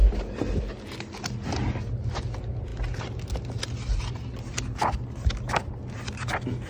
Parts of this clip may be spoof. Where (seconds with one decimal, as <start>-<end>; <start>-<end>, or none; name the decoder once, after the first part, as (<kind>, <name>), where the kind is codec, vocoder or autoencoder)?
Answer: none